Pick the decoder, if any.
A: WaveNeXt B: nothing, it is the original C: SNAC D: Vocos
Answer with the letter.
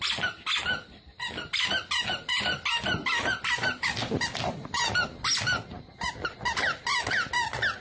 B